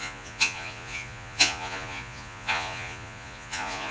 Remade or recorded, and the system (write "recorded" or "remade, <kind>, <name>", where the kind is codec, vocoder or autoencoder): remade, vocoder, Vocos